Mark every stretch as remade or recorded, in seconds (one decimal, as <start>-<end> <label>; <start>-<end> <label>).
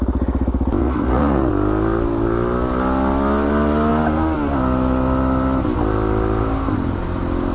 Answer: 0.0-0.8 recorded; 0.8-1.5 remade; 1.5-7.5 recorded